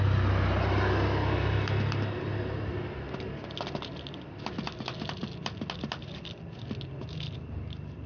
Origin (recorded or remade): recorded